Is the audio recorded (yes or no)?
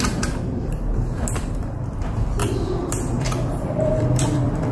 no